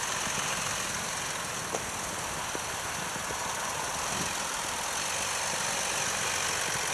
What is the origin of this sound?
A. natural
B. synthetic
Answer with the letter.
A